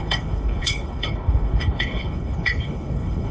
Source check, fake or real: fake